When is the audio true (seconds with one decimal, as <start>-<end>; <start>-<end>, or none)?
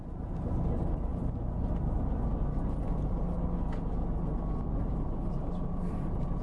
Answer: 0.0-6.4